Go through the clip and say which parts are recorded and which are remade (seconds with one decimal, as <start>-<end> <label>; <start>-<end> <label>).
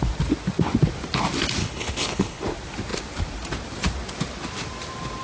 0.0-1.6 recorded; 1.6-2.4 remade; 2.4-5.2 recorded